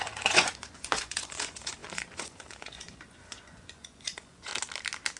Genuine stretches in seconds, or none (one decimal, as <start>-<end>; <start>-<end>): 4.5-5.2